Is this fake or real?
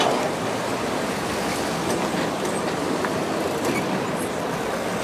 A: real